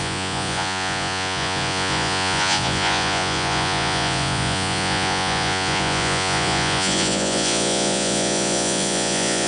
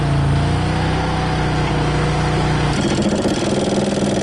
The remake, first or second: first